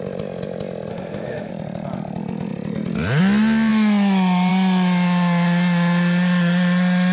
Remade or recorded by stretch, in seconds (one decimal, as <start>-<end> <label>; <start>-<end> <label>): 0.0-0.9 recorded; 0.9-1.5 remade; 1.5-7.1 recorded